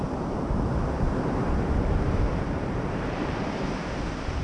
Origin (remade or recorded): remade